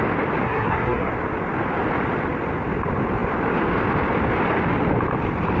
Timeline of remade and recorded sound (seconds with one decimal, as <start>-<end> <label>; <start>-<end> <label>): 0.0-0.4 recorded; 0.4-1.1 remade; 1.1-5.6 recorded